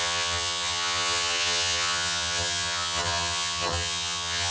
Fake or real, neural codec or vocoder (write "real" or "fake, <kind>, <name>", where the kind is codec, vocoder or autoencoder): fake, vocoder, HiFi-GAN